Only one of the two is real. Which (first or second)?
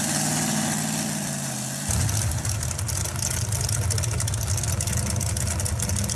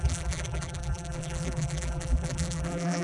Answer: first